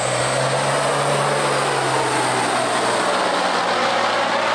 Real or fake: real